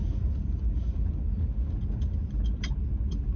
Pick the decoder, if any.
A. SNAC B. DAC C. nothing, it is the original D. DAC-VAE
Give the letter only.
C